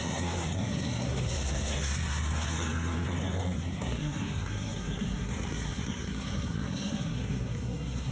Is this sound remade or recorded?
remade